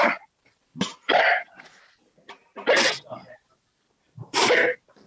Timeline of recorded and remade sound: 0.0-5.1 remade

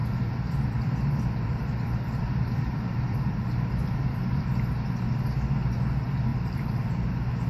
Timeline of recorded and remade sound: 0.0-4.5 remade; 4.5-6.3 recorded; 6.3-7.1 remade; 7.1-7.5 recorded

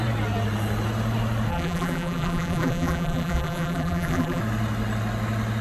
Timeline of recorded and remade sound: 0.0-1.5 recorded; 1.5-4.4 remade; 4.4-5.6 recorded

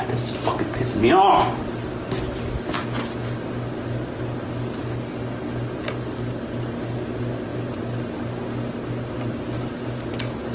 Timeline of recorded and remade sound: 0.0-10.5 recorded

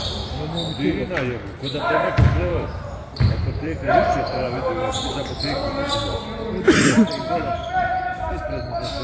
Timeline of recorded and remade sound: 0.0-2.5 recorded; 2.5-5.3 remade; 5.3-9.0 recorded

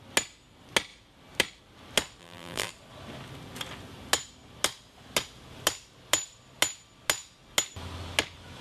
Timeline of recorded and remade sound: 0.0-2.2 recorded; 2.2-2.7 remade; 2.7-8.6 recorded